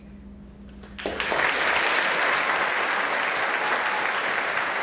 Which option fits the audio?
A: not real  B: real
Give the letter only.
B